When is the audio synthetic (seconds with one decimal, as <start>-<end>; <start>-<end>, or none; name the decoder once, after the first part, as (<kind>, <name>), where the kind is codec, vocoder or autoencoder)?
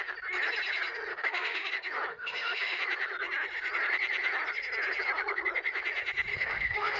1.1-1.7 (autoencoder, DAC-VAE); 2.1-2.8; 6.3-7.0